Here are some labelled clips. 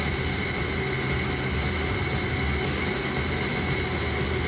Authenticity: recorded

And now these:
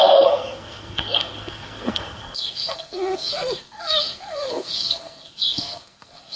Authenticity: remade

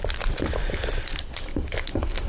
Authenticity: recorded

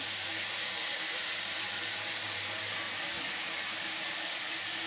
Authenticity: remade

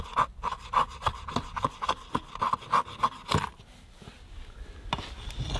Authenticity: recorded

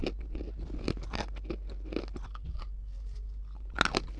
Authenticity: recorded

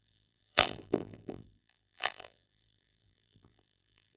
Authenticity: remade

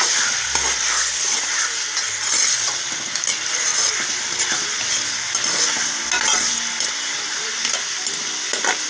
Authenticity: recorded